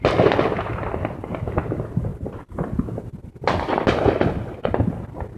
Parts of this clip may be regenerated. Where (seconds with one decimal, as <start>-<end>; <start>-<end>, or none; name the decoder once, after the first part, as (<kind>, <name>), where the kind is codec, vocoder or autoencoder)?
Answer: none

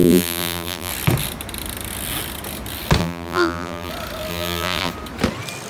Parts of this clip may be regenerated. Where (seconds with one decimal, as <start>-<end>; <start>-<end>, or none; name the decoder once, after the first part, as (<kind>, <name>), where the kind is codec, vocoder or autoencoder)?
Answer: 0.0-0.9 (vocoder, BigVGAN v2); 3.0-3.9; 4.3-4.9